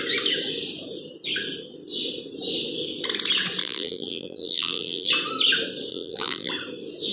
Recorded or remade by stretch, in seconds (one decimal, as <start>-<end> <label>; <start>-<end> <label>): 0.0-3.6 recorded; 3.6-5.1 remade; 5.1-5.9 recorded; 5.9-6.5 remade; 6.5-7.1 recorded